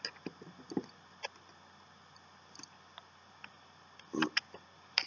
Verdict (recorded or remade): recorded